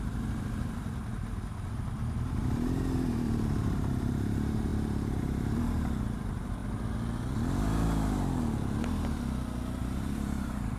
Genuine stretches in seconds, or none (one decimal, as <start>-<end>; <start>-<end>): 6.6-9.8